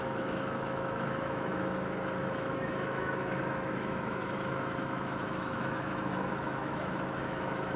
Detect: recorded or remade remade